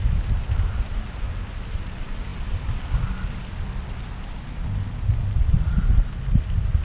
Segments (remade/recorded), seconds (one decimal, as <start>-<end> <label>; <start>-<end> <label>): 0.0-6.8 recorded